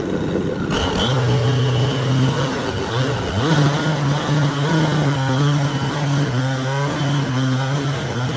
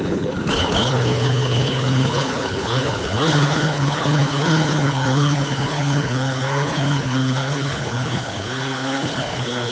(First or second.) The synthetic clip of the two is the second